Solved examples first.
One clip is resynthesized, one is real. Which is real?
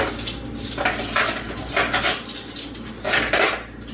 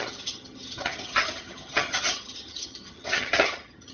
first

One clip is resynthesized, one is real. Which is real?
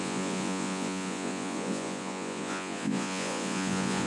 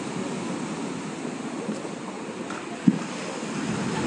second